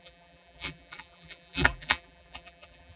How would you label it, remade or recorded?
remade